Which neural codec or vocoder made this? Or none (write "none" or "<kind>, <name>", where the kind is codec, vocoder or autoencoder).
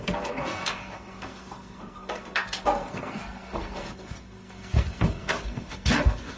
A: codec, SNAC